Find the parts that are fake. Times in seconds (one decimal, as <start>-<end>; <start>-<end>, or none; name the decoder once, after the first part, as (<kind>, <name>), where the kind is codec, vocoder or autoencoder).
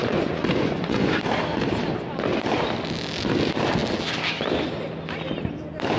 0.0-1.2 (vocoder, Vocos)